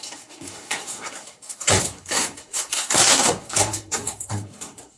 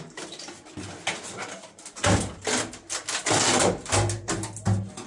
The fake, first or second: first